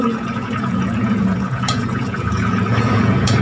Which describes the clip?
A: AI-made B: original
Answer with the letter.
A